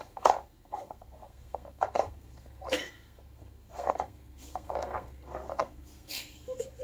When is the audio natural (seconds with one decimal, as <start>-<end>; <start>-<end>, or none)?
none

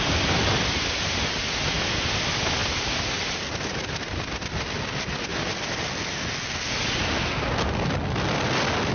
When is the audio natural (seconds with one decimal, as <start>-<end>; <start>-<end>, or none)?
0.0-8.9

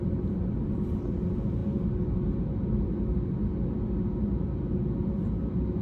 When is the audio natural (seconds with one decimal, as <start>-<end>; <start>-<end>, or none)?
0.0-5.8

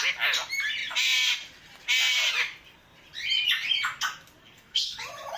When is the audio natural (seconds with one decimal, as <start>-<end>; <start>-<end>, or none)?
0.0-4.4; 5.0-5.4